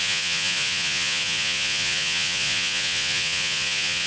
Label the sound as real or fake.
fake